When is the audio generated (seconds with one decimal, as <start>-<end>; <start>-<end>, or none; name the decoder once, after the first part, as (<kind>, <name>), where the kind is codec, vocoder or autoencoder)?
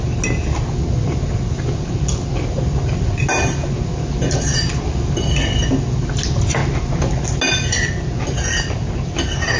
none